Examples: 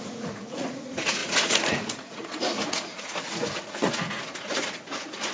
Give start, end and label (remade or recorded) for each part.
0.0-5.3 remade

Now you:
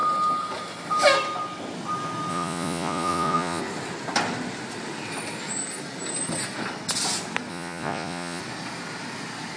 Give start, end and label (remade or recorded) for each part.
0.0-2.3 recorded; 2.3-3.6 remade; 3.6-7.5 recorded; 7.5-8.4 remade; 8.4-9.6 recorded

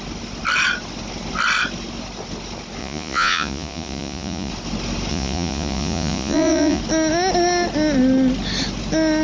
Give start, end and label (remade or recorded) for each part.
0.0-2.8 recorded; 2.8-4.5 remade; 4.5-5.1 recorded; 5.1-6.8 remade; 6.8-9.2 recorded